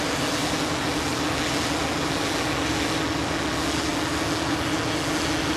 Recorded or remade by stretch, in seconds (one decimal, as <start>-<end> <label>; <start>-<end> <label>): 0.0-5.6 recorded